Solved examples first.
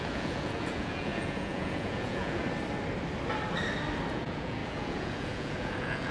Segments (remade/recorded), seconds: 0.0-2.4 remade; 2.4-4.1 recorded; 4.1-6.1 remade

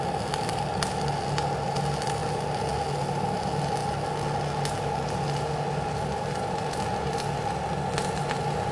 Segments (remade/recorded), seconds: 0.0-8.7 recorded